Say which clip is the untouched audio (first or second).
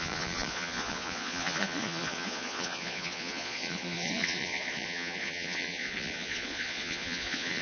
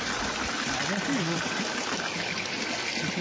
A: second